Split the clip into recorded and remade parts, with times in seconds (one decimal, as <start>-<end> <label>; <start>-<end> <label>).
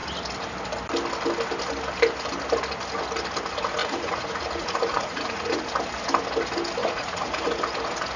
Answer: 0.0-3.8 recorded; 3.8-5.7 remade; 5.7-6.8 recorded; 6.8-7.5 remade; 7.5-8.2 recorded